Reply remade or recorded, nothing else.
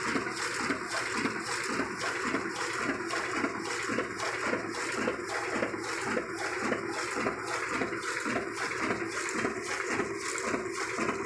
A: recorded